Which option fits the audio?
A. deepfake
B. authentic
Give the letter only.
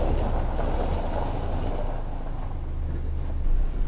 B